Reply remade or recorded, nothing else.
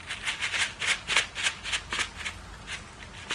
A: recorded